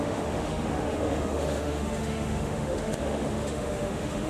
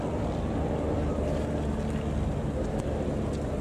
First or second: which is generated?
first